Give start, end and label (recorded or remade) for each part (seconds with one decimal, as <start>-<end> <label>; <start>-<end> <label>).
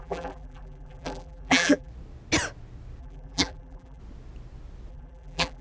0.0-1.9 remade; 1.9-3.0 recorded; 3.0-4.0 remade; 4.0-4.9 recorded; 4.9-5.6 remade